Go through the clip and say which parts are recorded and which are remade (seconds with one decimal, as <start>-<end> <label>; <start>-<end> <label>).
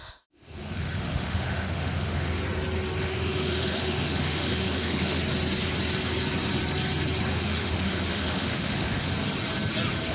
0.0-2.4 remade; 2.4-3.0 recorded; 3.0-5.2 remade; 5.2-7.3 recorded; 7.3-9.1 remade; 9.1-10.1 recorded